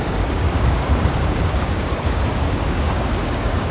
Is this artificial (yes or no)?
yes